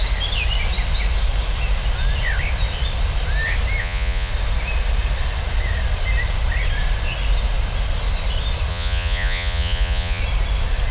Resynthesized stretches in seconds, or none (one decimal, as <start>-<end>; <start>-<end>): 3.8-4.3; 8.7-10.2